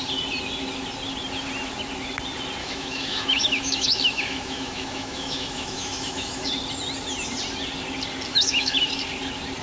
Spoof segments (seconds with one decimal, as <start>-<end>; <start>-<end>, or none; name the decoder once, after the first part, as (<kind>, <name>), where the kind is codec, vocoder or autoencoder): 2.6-6.5 (autoencoder, DAC-VAE); 8.3-8.9

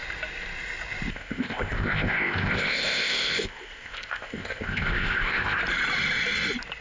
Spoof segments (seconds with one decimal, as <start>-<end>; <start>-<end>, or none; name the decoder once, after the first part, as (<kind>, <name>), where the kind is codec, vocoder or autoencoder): 1.1-5.6 (codec, ZipCodec)

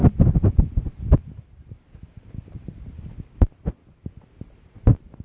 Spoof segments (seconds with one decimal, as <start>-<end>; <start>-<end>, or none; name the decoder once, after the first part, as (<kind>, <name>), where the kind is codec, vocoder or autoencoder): none

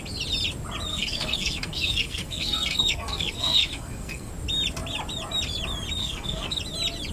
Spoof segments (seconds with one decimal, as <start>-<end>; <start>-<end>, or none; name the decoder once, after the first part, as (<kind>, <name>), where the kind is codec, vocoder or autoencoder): 0.9-4.3 (codec, SNAC); 6.0-6.6

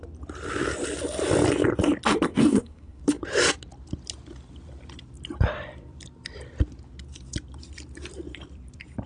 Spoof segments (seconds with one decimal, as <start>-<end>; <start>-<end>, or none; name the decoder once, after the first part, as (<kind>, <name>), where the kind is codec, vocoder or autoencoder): 2.3-3.0 (codec, SNAC)